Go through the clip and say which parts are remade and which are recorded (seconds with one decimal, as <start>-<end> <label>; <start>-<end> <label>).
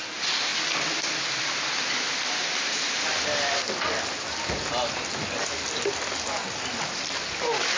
0.0-7.8 recorded